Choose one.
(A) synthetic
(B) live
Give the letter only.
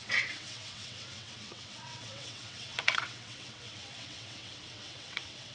A